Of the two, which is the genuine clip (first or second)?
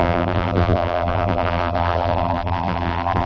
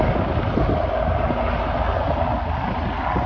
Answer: second